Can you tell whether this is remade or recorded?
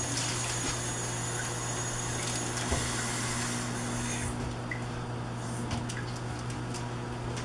recorded